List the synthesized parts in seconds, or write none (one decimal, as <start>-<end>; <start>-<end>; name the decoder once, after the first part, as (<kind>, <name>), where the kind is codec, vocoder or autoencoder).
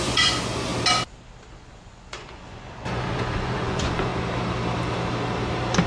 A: 0.0-0.7 (vocoder, Vocos); 1.6-4.1